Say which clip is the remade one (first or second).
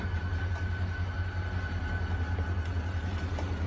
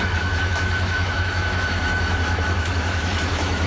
second